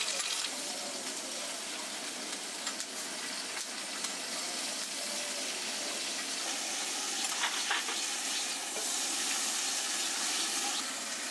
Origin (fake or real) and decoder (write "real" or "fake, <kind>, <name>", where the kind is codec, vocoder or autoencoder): real